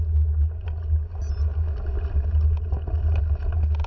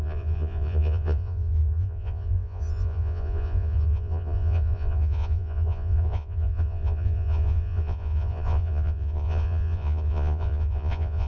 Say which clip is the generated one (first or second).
second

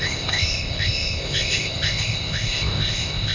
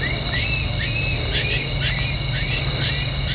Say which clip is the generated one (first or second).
first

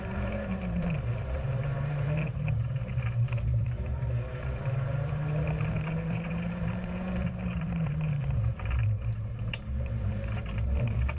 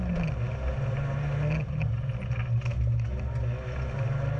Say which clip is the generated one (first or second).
first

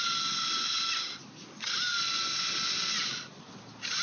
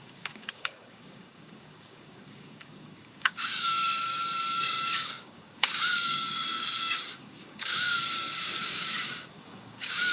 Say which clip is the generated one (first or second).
second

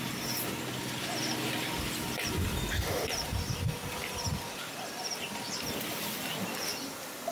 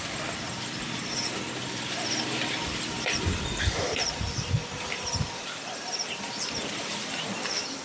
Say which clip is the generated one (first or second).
second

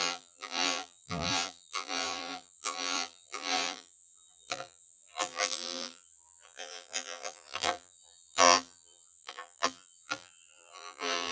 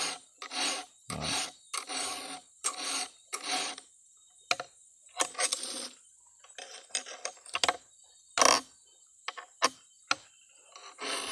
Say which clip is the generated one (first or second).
first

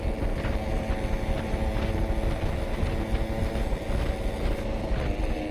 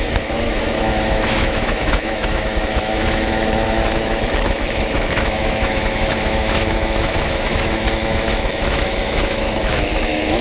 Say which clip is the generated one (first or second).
second